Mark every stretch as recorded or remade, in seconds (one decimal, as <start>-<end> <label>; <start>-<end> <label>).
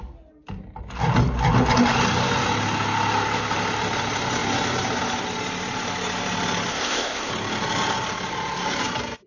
0.0-6.7 recorded; 6.7-7.3 remade; 7.3-9.3 recorded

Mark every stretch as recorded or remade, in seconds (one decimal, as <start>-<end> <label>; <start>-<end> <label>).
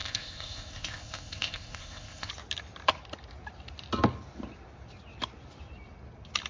0.0-2.3 remade; 2.3-6.5 recorded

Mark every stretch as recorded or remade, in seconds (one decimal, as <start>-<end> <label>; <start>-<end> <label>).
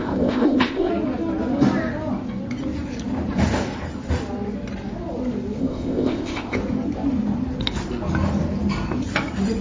0.0-0.9 remade; 0.9-5.6 recorded; 5.6-6.6 remade; 6.6-9.6 recorded